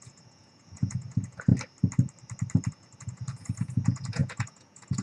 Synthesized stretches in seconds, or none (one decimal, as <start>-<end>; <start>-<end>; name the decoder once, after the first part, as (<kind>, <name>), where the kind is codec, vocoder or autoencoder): 0.0-1.5 (vocoder, Vocos); 2.7-5.0